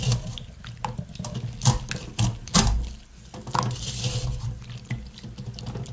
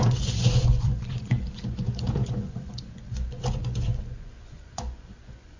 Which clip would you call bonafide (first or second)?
first